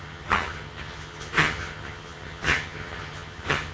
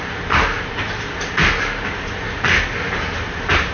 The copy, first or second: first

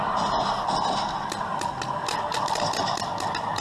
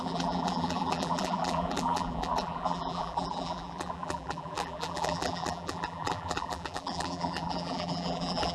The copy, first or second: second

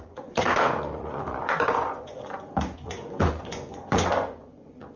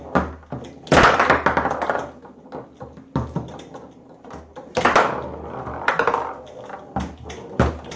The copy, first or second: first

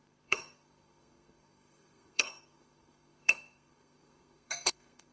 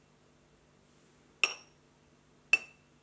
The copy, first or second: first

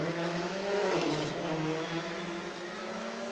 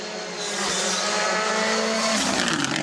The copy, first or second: first